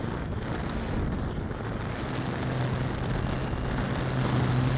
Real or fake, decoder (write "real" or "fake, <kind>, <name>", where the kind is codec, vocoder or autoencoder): real